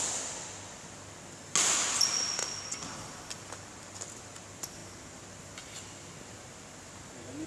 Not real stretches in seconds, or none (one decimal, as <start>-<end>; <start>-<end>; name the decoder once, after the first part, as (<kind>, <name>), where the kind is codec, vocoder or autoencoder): none